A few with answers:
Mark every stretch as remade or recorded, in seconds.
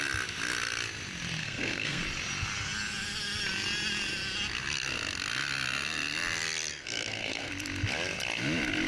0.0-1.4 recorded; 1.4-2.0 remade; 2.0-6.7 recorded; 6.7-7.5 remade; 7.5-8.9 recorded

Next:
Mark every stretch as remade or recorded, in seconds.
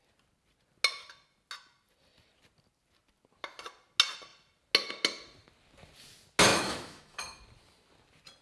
0.0-6.5 recorded; 6.5-7.4 remade; 7.4-8.4 recorded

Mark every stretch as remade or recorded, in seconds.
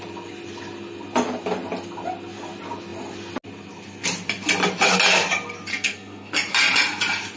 0.0-5.7 recorded; 5.7-6.3 remade; 6.3-7.4 recorded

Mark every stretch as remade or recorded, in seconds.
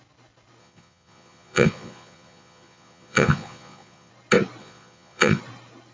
0.0-0.6 recorded; 0.6-4.1 remade; 4.1-4.6 recorded; 4.6-5.4 remade; 5.4-5.9 recorded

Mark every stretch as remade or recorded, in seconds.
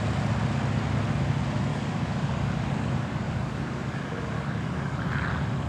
0.0-1.7 recorded; 1.7-5.1 remade; 5.1-5.7 recorded